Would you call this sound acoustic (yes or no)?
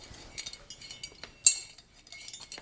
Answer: yes